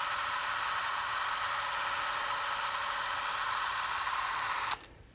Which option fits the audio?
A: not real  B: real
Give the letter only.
B